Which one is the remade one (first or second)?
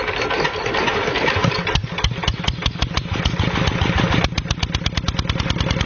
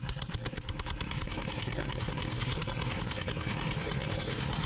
second